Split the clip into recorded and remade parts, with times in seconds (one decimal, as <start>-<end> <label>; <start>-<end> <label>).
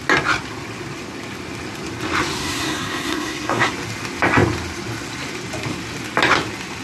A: 0.0-2.4 recorded; 2.4-3.7 remade; 3.7-6.8 recorded